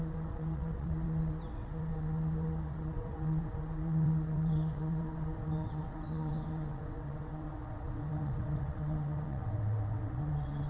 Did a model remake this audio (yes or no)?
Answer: yes